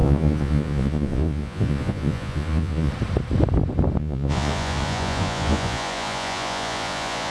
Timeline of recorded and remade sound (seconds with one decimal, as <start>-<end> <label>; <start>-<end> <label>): 0.0-2.9 remade; 2.9-4.0 recorded; 4.0-7.3 remade